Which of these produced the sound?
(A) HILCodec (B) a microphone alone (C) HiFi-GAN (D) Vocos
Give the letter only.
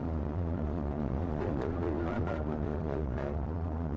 D